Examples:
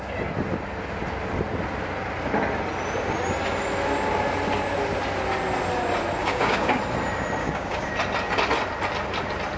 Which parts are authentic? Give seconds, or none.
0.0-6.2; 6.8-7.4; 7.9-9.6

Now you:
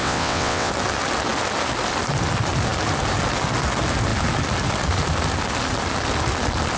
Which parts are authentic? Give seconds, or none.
0.7-6.8

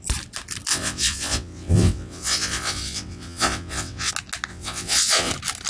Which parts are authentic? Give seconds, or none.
0.0-0.7; 4.1-4.5; 5.3-5.7

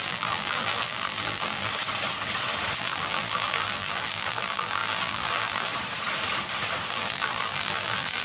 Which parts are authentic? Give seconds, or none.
1.7-2.8; 5.7-6.9